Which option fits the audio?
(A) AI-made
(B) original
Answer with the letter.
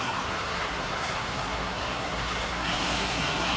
A